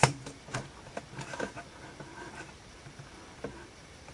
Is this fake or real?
fake